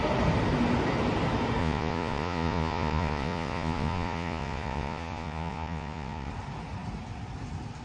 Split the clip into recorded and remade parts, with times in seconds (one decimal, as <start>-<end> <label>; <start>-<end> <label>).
0.0-1.6 recorded; 1.6-6.3 remade; 6.3-7.8 recorded